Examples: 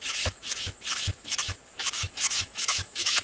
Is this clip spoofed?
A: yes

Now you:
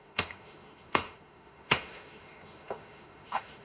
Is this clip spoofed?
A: yes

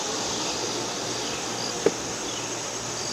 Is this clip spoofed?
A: no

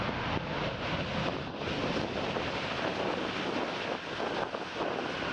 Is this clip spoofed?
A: no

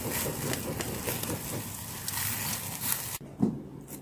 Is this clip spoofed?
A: no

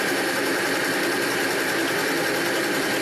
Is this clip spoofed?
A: no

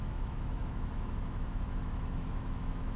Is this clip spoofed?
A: yes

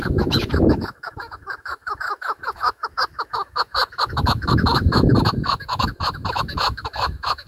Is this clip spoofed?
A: yes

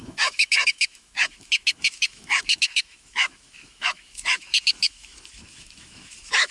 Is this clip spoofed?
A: yes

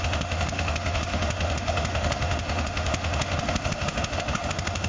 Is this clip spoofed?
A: yes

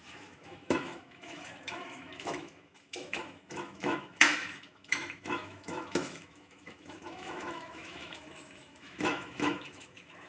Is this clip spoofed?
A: yes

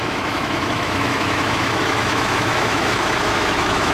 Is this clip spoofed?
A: yes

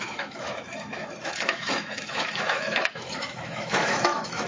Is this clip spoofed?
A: yes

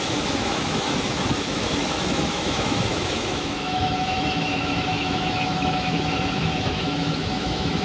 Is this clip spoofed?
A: yes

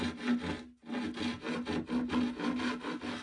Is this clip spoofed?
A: no